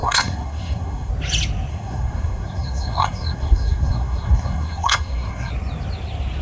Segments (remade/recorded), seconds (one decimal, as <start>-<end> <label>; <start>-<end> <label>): 0.0-1.1 remade; 1.1-1.7 recorded; 1.7-5.5 remade; 5.5-6.4 recorded